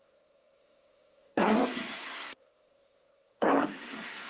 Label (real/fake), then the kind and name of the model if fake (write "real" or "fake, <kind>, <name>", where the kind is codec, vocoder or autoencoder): fake, codec, SNAC